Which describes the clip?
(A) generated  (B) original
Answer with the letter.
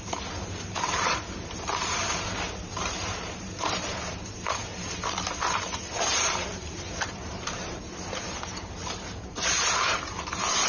A